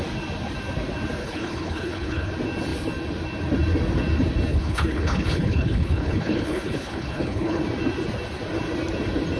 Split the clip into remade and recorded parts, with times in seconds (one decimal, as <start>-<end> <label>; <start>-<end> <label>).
0.0-1.2 recorded; 1.2-2.3 remade; 2.3-4.5 recorded; 4.5-7.6 remade; 7.6-9.4 recorded